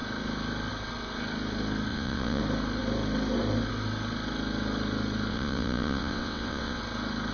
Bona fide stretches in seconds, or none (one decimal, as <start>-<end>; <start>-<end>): 0.0-1.9; 2.4-5.3; 6.8-7.3